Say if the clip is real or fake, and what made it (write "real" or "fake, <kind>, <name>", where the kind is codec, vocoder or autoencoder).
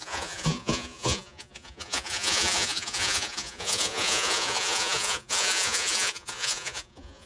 fake, vocoder, Vocos